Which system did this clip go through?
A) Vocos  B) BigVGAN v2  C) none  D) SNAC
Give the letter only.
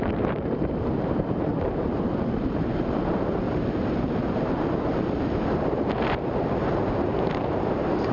B